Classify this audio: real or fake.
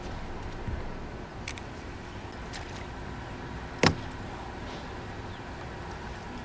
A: real